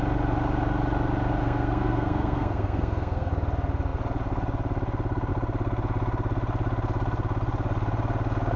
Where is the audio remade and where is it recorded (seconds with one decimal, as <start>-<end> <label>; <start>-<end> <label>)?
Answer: 0.0-1.4 recorded; 1.4-3.3 remade; 3.3-8.6 recorded